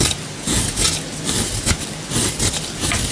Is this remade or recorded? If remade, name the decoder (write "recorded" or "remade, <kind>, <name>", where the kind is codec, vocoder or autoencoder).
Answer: recorded